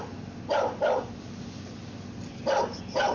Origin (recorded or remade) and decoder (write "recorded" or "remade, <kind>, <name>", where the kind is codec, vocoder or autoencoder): recorded